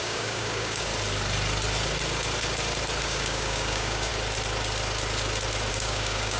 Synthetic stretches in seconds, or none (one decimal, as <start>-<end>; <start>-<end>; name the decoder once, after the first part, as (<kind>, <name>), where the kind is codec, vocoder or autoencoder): 0.0-0.9 (codec, DAC); 3.0-4.1; 5.7-6.4